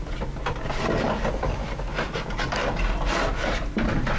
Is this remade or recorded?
recorded